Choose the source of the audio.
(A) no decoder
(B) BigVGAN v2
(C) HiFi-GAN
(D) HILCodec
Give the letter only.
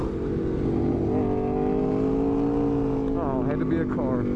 A